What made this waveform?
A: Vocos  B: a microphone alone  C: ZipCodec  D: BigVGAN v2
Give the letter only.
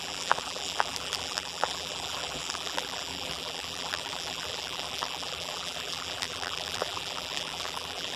D